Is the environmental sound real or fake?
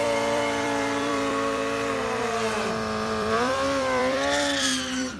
fake